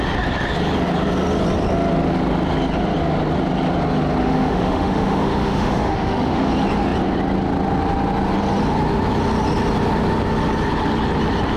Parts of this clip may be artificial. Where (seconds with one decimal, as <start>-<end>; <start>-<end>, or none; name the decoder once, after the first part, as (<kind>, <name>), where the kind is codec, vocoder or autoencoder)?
4.2-6.5 (autoencoder, DAC-VAE)